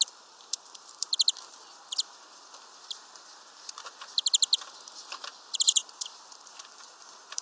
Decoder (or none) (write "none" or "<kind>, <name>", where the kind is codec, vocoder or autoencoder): vocoder, BigVGAN v2